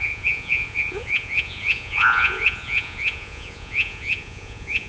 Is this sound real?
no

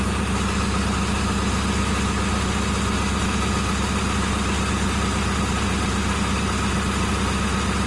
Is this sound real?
yes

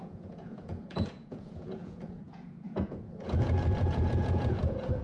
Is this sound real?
no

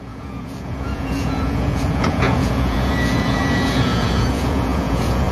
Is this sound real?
no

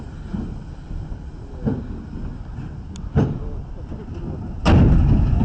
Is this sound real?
yes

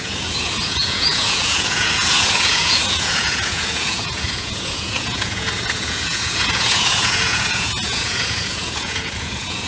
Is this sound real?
no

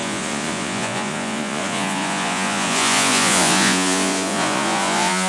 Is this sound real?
no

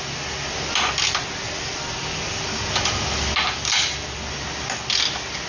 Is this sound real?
yes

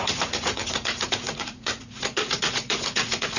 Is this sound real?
no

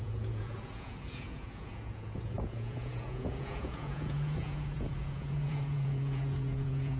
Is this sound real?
no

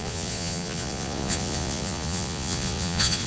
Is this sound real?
no